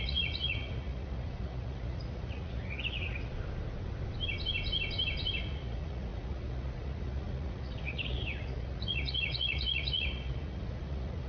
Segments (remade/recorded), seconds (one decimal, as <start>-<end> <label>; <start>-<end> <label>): 0.0-3.3 remade; 3.3-5.4 recorded; 5.4-11.3 remade